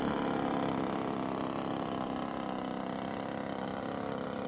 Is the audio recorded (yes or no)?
yes